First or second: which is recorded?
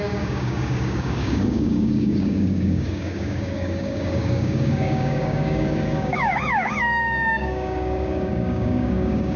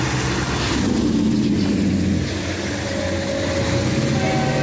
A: second